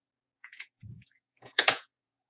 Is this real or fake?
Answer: fake